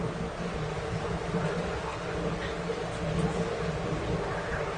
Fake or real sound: real